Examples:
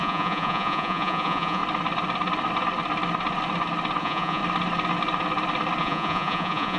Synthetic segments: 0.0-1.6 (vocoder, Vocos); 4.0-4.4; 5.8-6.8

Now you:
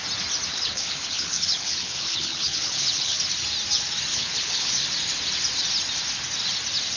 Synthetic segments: 0.5-3.2 (codec, HILCodec); 4.1-4.7

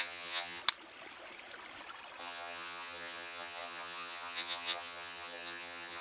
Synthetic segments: 0.0-0.6 (vocoder, HiFi-GAN); 2.2-6.0

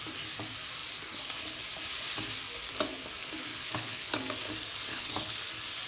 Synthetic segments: 3.5-4.1 (codec, HILCodec); 4.9-5.5